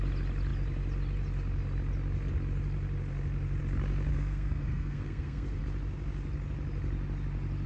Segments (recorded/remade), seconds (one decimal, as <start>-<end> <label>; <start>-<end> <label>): 0.0-4.1 recorded; 4.1-5.6 remade; 5.6-7.7 recorded